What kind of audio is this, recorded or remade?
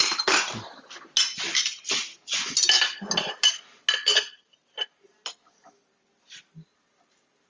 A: recorded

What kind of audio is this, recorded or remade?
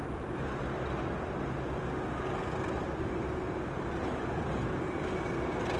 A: recorded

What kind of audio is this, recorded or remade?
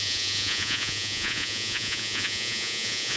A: remade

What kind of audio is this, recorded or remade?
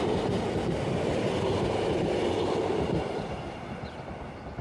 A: recorded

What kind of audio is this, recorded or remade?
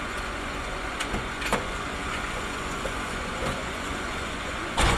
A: remade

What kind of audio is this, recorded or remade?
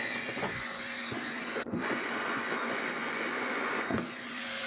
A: remade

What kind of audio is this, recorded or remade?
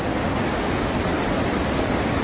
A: recorded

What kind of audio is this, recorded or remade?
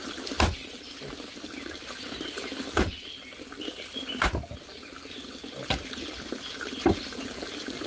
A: recorded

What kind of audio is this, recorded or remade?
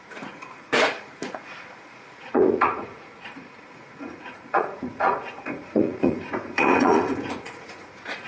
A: remade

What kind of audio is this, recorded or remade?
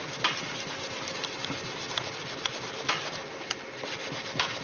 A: recorded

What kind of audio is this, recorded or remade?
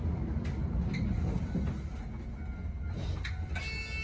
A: recorded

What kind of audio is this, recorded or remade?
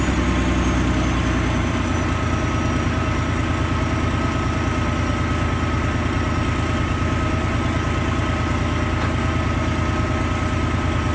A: recorded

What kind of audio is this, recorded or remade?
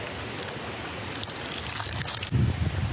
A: recorded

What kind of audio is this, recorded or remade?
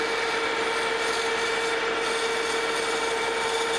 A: recorded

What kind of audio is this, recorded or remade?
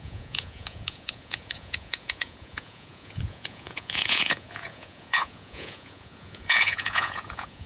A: remade